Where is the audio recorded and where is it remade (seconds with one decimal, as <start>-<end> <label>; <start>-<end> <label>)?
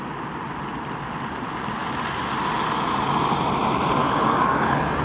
0.0-4.0 recorded; 4.0-5.0 remade